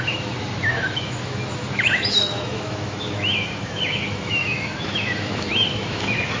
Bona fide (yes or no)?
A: no